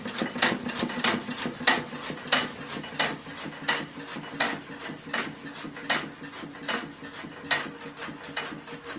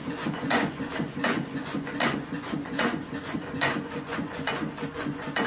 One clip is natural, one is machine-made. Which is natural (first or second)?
first